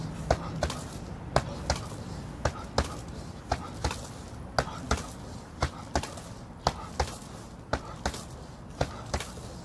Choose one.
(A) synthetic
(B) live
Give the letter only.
B